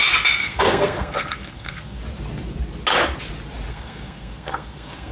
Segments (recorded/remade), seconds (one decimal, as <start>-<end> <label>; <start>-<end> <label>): 0.0-0.4 recorded; 0.4-2.0 remade; 2.0-3.7 recorded; 3.7-5.1 remade